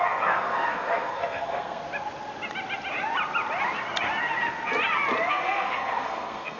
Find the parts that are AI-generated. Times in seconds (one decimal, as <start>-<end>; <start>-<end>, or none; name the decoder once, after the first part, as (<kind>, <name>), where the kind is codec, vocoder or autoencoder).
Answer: 0.0-1.8 (codec, SNAC); 5.3-6.6